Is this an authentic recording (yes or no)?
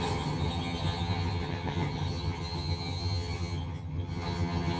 no